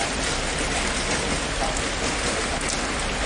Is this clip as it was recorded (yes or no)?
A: yes